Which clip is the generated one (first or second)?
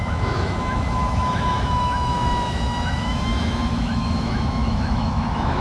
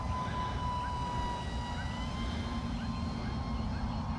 first